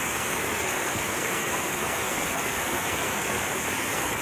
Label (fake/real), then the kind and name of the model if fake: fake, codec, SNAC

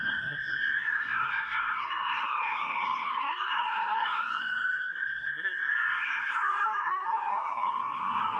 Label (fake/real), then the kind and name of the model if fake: fake, codec, SNAC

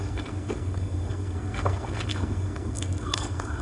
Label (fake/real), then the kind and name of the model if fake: fake, codec, SNAC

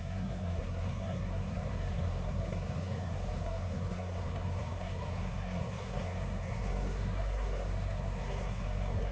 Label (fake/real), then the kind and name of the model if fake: fake, codec, SNAC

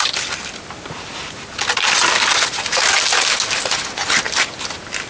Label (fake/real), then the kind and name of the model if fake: real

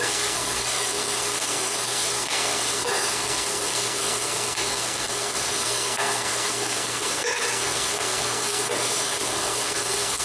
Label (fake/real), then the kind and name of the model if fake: fake, codec, SNAC